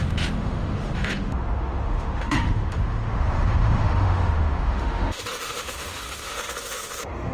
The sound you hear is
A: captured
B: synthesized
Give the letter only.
B